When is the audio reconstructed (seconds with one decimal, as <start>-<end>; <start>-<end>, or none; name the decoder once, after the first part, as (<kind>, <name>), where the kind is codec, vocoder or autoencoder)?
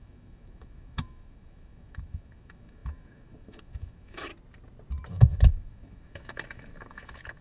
0.0-4.3 (autoencoder, DAC-VAE); 5.1-7.4